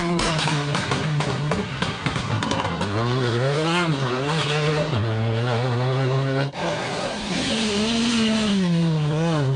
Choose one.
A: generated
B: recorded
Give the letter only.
A